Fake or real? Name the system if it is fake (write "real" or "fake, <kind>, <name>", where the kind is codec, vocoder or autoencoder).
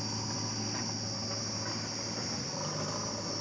real